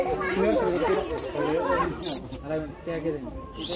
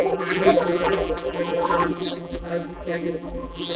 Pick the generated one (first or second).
second